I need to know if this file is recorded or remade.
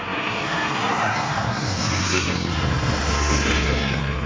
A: remade